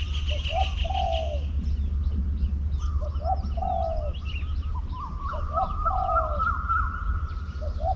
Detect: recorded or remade recorded